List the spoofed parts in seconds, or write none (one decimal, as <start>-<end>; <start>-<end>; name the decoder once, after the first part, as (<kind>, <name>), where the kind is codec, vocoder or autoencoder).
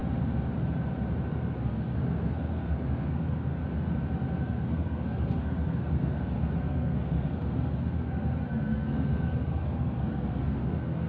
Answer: 1.3-3.6 (codec, SNAC); 4.4-11.1